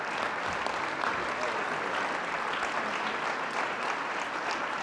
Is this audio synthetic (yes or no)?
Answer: no